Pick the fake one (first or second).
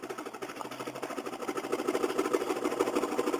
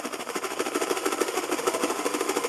second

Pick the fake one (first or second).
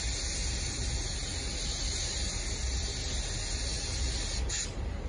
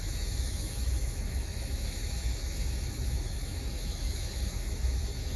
second